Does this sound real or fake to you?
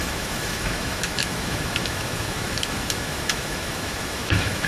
fake